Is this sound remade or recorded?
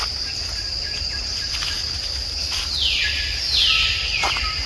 recorded